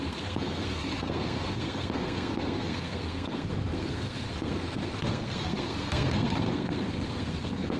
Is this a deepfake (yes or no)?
yes